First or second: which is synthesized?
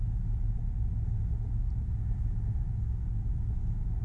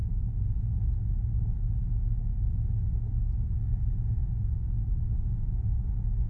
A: second